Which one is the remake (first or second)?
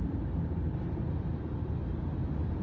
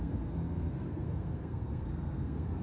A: second